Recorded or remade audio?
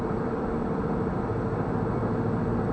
remade